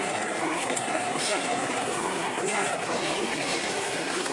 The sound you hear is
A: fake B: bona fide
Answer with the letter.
A